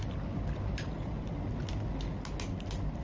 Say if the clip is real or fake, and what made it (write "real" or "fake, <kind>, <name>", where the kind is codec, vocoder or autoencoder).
real